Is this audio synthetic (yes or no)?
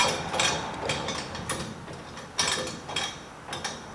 no